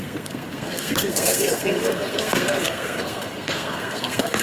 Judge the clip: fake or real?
fake